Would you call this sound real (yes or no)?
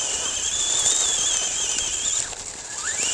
yes